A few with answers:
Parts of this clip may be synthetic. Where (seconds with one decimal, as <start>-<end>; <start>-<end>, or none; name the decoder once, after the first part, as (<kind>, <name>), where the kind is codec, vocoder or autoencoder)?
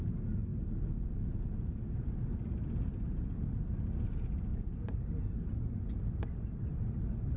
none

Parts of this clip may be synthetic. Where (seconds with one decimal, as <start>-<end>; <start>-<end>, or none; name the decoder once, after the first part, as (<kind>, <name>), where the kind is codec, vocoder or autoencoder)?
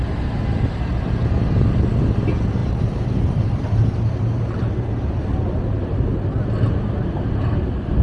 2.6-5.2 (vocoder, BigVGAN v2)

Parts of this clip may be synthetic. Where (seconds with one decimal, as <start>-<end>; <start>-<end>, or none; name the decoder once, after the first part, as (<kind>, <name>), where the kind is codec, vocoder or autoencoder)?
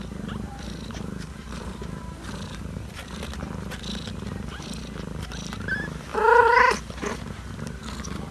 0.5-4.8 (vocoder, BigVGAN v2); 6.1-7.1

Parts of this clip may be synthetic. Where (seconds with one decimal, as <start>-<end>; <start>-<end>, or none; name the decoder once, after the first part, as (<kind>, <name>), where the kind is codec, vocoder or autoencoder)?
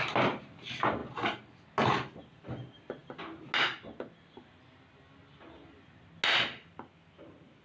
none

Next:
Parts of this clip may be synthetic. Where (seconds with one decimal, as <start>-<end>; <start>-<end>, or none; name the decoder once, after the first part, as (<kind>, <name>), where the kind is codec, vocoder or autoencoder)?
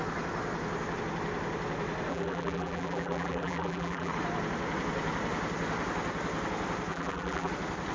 2.1-4.1 (vocoder, BigVGAN v2); 6.9-7.5